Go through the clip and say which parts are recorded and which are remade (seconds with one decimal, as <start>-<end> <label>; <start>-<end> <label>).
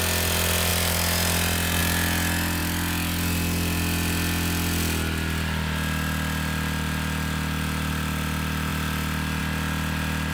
0.0-10.3 recorded